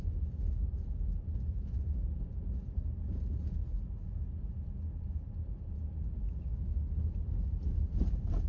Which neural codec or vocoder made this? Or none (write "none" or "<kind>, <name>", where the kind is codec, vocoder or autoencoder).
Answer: none